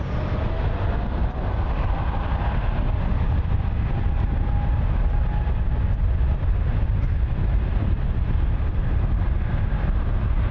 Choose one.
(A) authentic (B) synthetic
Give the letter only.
A